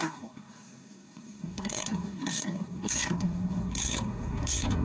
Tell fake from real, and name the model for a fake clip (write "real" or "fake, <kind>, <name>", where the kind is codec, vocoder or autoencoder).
fake, codec, SNAC